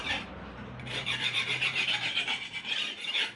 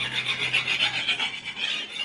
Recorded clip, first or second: second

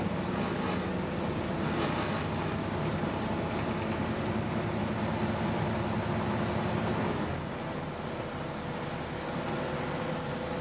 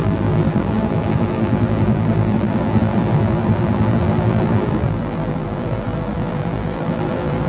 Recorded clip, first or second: first